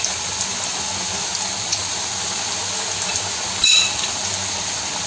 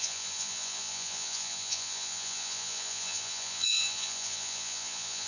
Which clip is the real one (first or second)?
first